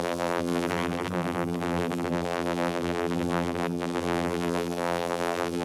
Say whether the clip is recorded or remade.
remade